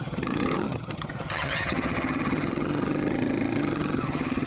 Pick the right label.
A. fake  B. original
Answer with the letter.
A